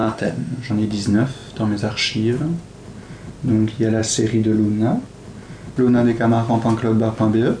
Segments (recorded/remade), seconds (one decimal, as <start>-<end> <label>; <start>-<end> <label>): 0.0-0.7 remade; 0.7-7.6 recorded